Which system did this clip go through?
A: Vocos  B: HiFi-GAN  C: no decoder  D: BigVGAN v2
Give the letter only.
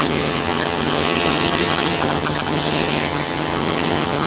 B